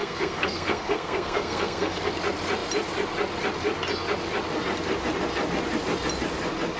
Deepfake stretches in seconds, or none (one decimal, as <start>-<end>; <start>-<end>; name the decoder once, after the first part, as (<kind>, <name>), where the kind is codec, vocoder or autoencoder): 0.0-2.1 (codec, SNAC)